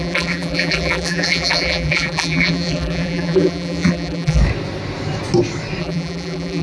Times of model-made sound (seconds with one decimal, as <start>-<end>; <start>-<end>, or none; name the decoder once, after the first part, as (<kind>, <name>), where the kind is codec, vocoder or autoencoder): 0.0-4.4 (vocoder, BigVGAN v2); 5.8-6.6